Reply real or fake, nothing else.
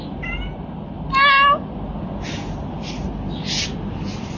real